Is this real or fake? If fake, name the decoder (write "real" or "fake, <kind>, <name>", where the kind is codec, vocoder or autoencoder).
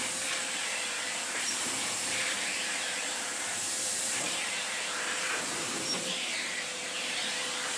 fake, vocoder, BigVGAN v2